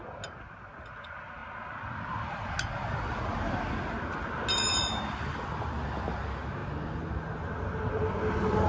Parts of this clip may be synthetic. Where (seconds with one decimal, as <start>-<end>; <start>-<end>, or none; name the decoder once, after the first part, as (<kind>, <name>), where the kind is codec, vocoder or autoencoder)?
none